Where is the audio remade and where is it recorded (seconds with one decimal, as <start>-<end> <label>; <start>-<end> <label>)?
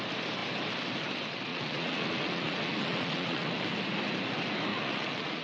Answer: 0.0-1.5 recorded; 1.5-3.6 remade; 3.6-4.7 recorded; 4.7-5.4 remade